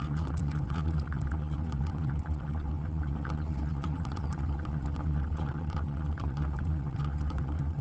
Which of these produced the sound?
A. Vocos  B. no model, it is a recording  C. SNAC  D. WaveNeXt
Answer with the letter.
D